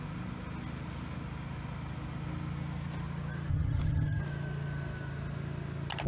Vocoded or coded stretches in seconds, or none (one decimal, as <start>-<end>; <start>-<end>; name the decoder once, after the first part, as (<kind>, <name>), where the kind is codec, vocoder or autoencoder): 3.5-4.2 (vocoder, HiFi-GAN)